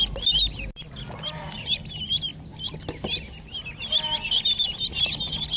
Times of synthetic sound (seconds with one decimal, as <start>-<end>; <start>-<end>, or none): none